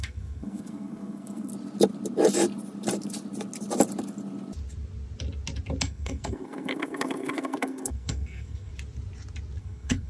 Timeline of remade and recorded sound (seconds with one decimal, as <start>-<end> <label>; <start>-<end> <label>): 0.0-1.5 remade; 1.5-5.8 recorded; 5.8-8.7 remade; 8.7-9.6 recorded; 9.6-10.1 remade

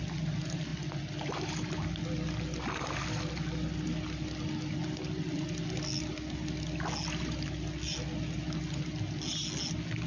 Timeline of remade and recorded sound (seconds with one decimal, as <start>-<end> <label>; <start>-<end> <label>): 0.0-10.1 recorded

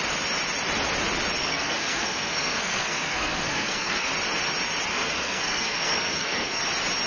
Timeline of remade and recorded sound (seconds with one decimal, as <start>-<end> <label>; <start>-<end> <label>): 0.0-1.4 recorded; 1.4-4.1 remade; 4.1-4.9 recorded; 4.9-6.6 remade; 6.6-7.1 recorded